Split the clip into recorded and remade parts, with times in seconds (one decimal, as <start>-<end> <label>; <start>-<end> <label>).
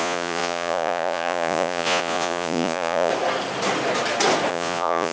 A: 0.0-3.1 remade; 3.1-4.5 recorded; 4.5-5.1 remade